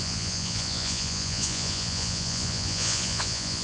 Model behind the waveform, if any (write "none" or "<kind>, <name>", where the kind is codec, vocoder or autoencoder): vocoder, Vocos